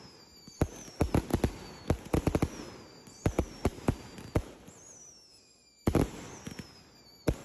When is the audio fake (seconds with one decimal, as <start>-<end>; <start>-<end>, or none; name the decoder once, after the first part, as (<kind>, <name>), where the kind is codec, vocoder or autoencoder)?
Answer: none